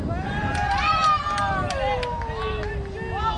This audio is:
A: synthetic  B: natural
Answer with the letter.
B